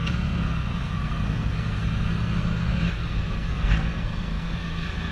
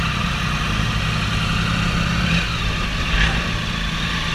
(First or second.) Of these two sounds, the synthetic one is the first